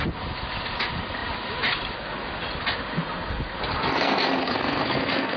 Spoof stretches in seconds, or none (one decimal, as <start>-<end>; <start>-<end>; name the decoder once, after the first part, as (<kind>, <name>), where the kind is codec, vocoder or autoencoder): 3.8-5.4 (codec, SNAC)